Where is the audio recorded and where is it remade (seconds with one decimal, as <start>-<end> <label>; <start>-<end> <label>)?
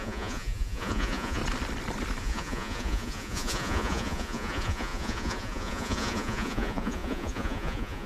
0.0-1.4 remade; 1.4-2.2 recorded; 2.2-8.1 remade